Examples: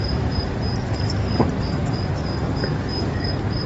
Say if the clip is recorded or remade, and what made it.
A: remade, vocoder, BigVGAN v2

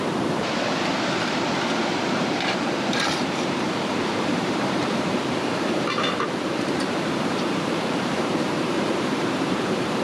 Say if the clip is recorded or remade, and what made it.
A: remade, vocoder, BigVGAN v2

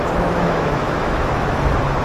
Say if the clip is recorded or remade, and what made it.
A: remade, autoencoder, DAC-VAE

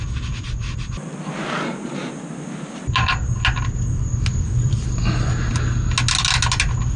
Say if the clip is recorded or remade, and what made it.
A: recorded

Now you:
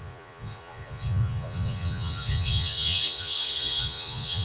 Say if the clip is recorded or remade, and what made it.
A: remade, vocoder, Vocos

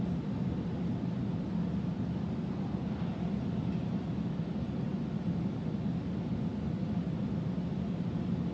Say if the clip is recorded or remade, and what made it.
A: recorded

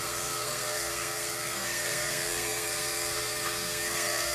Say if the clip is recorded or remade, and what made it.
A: remade, codec, SNAC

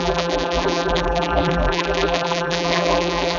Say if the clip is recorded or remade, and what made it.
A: remade, vocoder, BigVGAN v2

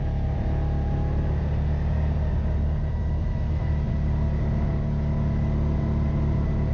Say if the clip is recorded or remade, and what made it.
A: recorded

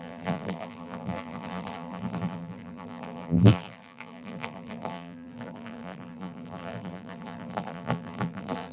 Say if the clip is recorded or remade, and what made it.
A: remade, vocoder, BigVGAN v2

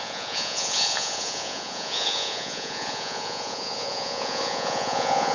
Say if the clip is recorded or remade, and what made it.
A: remade, vocoder, Vocos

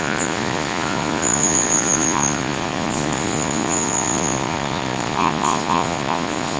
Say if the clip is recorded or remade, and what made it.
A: remade, vocoder, Vocos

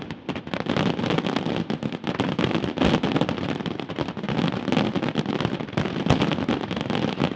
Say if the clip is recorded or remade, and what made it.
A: recorded